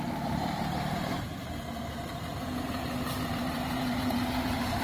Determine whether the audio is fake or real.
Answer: fake